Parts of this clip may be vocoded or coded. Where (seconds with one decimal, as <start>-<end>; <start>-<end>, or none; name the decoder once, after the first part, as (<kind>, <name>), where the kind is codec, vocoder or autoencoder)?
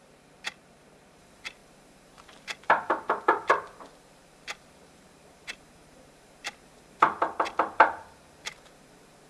0.0-9.3 (vocoder, BigVGAN v2)